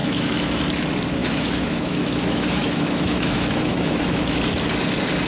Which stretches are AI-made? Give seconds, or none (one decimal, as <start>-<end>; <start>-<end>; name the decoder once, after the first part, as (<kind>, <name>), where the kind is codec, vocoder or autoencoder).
0.0-0.6 (autoencoder, DAC-VAE); 1.2-4.4